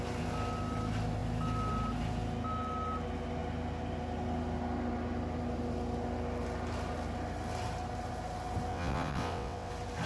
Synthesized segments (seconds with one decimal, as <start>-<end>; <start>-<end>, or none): 8.7-9.7